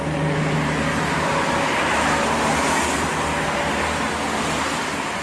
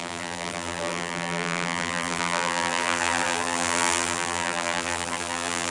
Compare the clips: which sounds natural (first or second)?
first